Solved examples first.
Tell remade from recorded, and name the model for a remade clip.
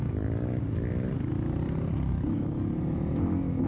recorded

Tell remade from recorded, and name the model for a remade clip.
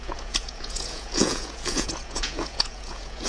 remade, vocoder, Vocos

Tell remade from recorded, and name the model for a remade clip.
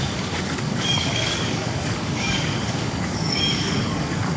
remade, codec, DAC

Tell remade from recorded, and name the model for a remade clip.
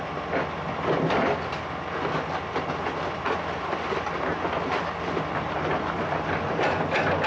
recorded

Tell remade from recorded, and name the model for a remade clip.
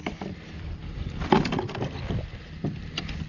recorded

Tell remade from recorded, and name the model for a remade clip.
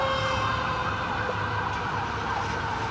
recorded